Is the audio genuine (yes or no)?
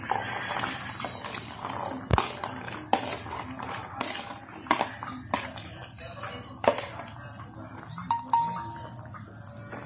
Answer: yes